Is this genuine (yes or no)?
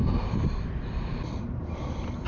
yes